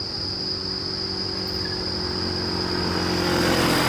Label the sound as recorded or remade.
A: recorded